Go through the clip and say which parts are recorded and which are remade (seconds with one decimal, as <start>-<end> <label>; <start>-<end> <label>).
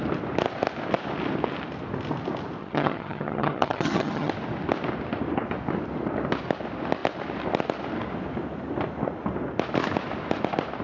0.0-2.6 recorded; 2.6-4.3 remade; 4.3-10.8 recorded